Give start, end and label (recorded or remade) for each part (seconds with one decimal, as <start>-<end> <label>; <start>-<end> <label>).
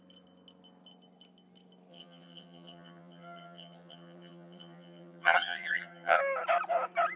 0.0-1.9 recorded; 1.9-6.2 remade; 6.2-7.2 recorded